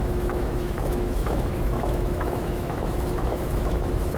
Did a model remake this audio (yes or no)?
yes